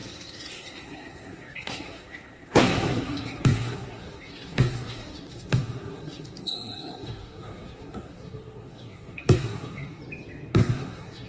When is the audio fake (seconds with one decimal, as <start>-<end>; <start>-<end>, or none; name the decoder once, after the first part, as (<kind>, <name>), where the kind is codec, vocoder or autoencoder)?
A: 0.0-10.0 (codec, SNAC); 10.5-11.3

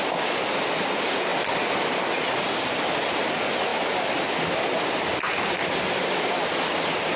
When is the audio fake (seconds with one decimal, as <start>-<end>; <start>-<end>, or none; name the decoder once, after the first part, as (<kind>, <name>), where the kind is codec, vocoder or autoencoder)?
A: none